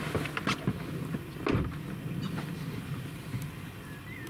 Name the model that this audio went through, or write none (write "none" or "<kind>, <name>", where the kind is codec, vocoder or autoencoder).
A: none